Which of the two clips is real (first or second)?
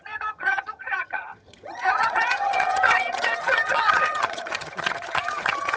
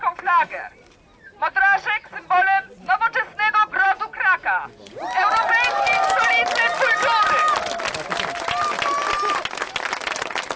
second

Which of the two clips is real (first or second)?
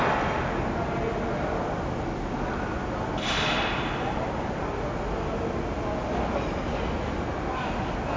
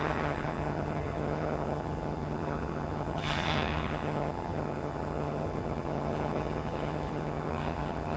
first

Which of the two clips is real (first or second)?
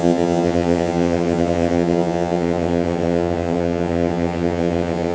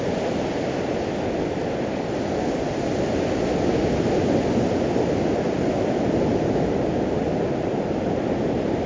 second